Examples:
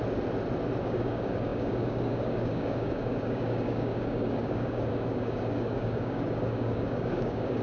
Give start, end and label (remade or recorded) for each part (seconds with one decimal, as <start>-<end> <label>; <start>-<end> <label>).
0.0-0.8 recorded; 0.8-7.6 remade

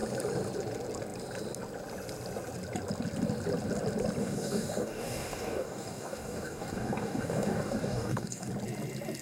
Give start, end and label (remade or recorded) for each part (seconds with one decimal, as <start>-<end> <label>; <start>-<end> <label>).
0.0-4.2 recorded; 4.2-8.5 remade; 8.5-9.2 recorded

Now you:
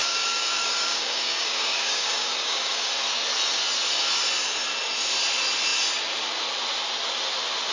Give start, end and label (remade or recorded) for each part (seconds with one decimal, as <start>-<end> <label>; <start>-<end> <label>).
0.0-2.9 remade; 2.9-7.7 recorded

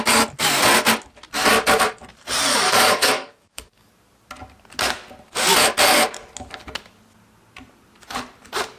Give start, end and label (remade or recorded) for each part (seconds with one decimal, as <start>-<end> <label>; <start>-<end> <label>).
0.0-2.5 recorded; 2.5-3.9 remade; 3.9-8.8 recorded

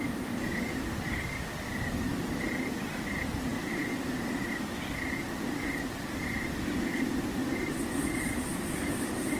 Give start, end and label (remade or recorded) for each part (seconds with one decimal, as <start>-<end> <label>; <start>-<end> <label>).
0.0-9.4 recorded

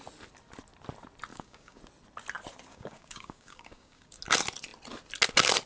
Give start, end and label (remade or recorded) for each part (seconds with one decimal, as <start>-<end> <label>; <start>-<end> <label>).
0.0-1.3 recorded; 1.3-1.8 remade; 1.8-2.7 recorded; 2.7-4.2 remade; 4.2-5.7 recorded

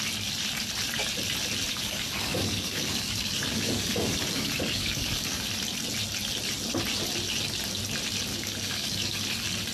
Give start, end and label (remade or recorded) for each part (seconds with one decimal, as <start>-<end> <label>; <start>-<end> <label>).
0.0-1.7 recorded; 1.7-5.5 remade; 5.5-8.3 recorded; 8.3-9.2 remade; 9.2-9.7 recorded

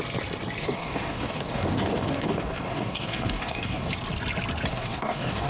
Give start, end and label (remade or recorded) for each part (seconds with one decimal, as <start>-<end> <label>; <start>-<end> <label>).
0.0-0.6 recorded; 0.6-3.9 remade; 3.9-4.7 recorded; 4.7-5.5 remade